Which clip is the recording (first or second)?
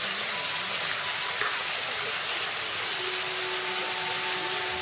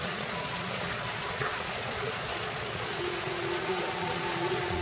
first